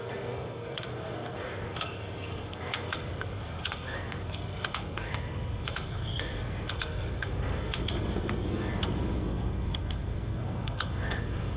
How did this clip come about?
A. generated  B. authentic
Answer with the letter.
A